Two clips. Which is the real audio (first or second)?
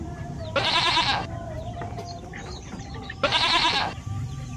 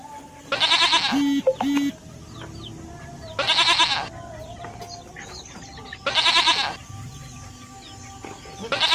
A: second